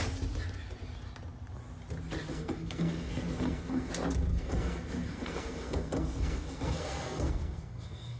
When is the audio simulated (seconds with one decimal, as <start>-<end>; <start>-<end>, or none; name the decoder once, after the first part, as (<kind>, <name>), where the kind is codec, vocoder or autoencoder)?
2.3-3.9 (codec, SNAC); 4.3-8.2